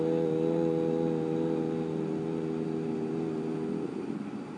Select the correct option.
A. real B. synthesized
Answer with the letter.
A